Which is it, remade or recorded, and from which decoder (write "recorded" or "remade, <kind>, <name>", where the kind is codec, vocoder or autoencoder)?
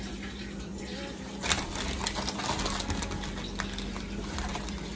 recorded